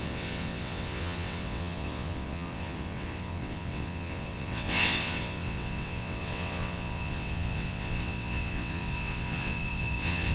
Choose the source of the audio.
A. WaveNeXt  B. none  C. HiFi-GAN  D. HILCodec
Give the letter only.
A